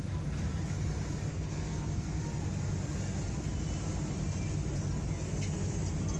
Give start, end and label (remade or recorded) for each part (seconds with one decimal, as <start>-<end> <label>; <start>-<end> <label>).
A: 0.0-1.3 recorded; 1.3-2.2 remade; 2.2-6.2 recorded